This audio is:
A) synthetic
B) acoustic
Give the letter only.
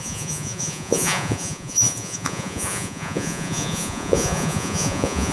A